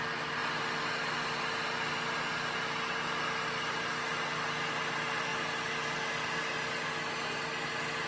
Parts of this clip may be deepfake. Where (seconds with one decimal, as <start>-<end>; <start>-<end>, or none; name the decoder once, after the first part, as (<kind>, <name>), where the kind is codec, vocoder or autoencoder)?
none